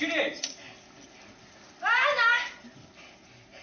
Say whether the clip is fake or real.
fake